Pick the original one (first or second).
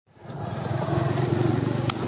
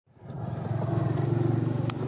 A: second